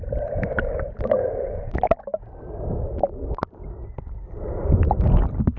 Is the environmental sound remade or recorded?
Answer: remade